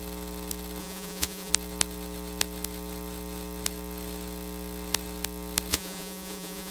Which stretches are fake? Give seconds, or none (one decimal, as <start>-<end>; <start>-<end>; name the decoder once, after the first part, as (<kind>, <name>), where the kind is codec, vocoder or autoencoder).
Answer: 0.8-1.5 (vocoder, Vocos); 5.7-6.7